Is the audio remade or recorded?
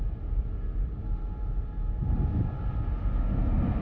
recorded